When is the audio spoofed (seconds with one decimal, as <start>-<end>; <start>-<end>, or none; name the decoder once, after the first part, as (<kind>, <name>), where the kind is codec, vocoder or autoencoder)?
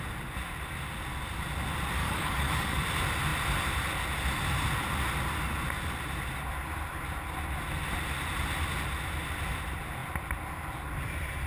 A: 2.0-2.8 (codec, DAC)